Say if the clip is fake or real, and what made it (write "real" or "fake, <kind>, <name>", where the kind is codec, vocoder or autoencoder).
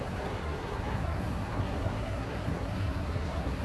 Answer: fake, codec, SNAC